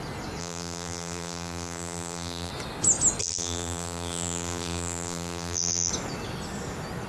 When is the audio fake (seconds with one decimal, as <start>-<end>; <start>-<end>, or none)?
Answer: 0.4-2.5; 3.2-5.9